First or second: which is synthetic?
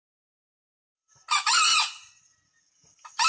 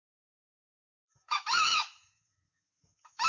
second